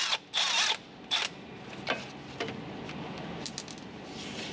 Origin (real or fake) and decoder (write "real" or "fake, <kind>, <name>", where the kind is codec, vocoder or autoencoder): real